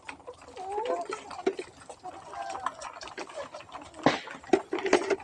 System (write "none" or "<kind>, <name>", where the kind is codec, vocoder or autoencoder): none